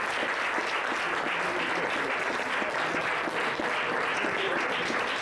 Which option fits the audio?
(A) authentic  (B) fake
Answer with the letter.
A